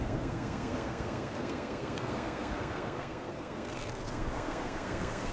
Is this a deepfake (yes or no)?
yes